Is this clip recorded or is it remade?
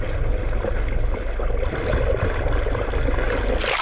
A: recorded